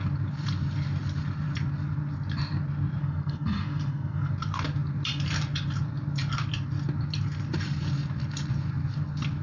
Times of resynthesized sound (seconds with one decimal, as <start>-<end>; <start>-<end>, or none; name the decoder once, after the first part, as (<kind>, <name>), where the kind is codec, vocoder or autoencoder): 3.0-4.3 (codec, SNAC)